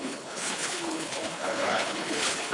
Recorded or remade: remade